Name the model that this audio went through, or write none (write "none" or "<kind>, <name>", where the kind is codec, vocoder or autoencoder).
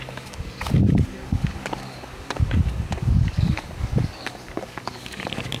codec, DAC